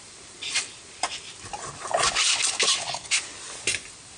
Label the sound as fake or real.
real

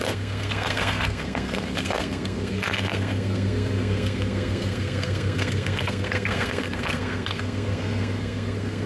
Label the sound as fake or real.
fake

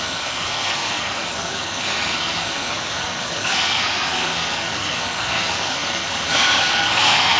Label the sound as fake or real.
fake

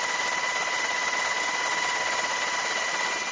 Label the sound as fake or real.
real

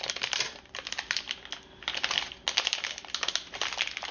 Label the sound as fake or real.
real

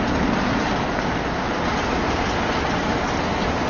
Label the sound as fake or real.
real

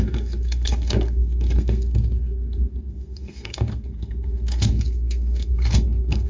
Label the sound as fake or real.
fake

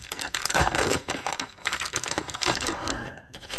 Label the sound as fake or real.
fake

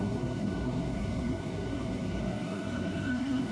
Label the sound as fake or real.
fake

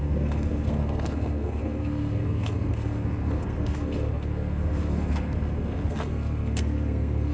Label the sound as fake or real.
fake